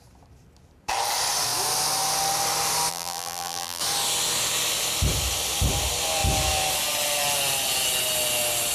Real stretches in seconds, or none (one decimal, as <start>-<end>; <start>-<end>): 0.0-2.9; 3.8-8.7